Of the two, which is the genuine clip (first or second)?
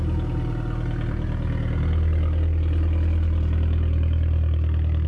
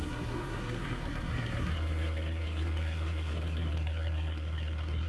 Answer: first